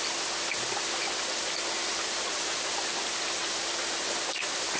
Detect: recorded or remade recorded